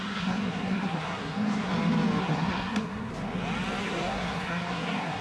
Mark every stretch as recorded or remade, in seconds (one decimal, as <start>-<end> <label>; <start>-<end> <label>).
0.0-1.7 remade; 1.7-2.2 recorded; 2.2-3.1 remade; 3.1-3.8 recorded; 3.8-5.2 remade